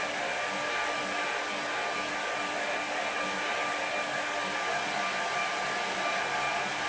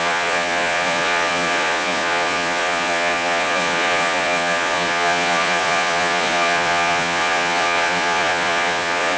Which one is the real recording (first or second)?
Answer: first